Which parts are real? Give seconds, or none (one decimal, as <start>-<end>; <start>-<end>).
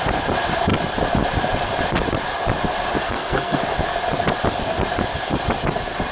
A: 0.0-3.0; 3.6-6.1